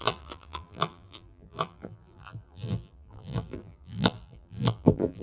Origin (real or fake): fake